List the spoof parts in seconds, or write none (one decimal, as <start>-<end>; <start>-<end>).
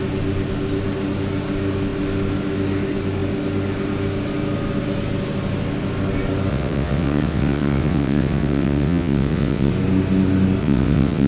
6.5-9.7; 10.6-11.3